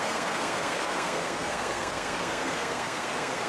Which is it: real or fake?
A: fake